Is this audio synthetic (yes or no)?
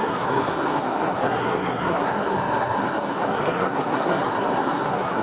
yes